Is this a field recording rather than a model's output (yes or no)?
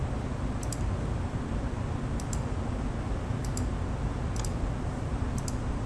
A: yes